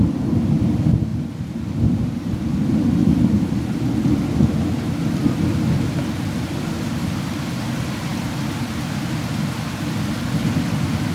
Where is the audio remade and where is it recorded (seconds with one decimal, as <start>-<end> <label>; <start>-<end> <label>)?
0.0-1.1 recorded; 1.1-5.5 remade; 5.5-11.1 recorded